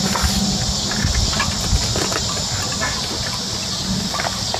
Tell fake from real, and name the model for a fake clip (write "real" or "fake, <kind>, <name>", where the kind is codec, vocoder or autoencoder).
real